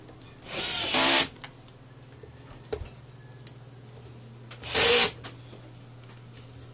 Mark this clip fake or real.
real